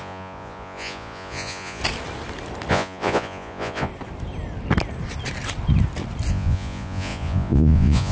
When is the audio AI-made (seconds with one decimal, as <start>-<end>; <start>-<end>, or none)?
0.0-1.8; 2.7-3.9; 6.3-8.1